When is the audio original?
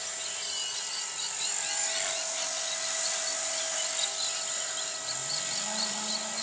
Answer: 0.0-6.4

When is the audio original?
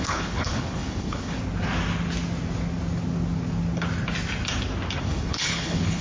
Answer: 1.4-5.0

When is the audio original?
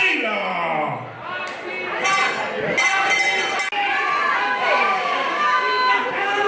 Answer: 0.5-4.4